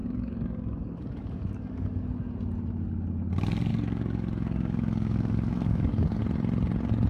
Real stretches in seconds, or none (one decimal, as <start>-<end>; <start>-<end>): 2.0-3.7; 6.2-7.1

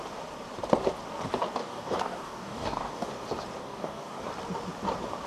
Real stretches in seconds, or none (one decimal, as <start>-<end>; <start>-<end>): 0.0-1.6; 3.1-3.6; 4.2-5.3

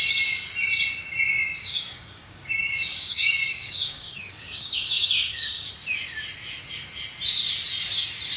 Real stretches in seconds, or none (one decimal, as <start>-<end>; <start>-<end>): 0.0-1.6; 5.7-8.4